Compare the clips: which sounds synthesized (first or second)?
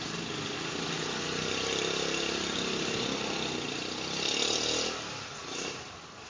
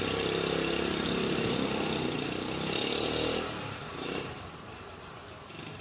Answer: second